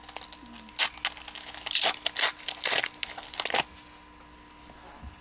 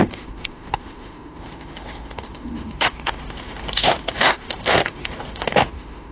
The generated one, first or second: second